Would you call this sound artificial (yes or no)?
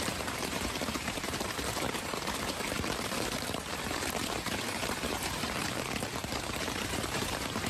yes